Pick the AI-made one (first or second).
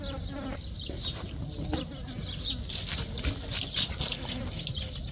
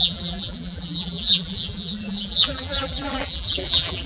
second